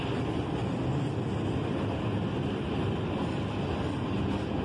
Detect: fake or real real